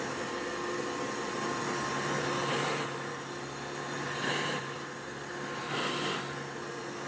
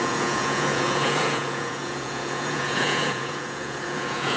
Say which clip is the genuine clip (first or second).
first